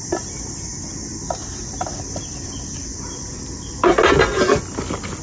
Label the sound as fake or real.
real